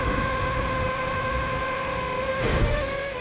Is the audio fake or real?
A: fake